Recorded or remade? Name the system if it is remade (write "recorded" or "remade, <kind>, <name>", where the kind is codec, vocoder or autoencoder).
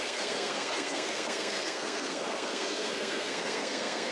remade, codec, SNAC